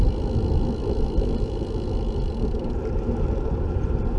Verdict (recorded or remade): recorded